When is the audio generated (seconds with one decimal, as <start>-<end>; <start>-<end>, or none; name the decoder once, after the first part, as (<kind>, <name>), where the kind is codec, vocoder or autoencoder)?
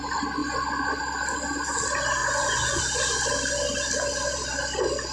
2.2-2.8 (vocoder, Vocos)